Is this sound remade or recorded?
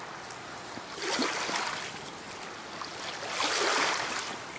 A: recorded